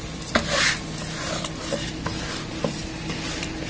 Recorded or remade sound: recorded